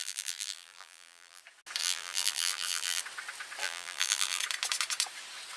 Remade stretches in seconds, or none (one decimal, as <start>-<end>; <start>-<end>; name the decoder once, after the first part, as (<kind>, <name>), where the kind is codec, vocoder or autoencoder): 0.0-1.4 (vocoder, BigVGAN v2); 1.8-3.0; 3.6-4.4